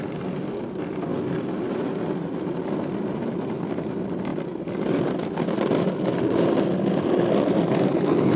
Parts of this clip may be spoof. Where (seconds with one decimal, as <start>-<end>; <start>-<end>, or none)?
0.0-4.3; 4.8-8.4